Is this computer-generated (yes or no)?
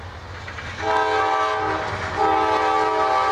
no